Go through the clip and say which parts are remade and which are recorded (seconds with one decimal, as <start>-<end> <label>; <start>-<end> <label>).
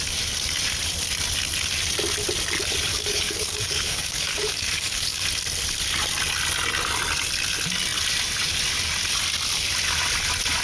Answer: 0.0-2.9 recorded; 2.9-5.2 remade; 5.2-10.6 recorded